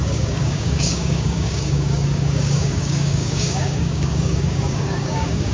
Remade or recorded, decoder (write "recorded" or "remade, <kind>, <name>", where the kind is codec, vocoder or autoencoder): remade, codec, DAC